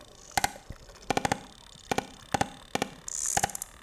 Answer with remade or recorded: recorded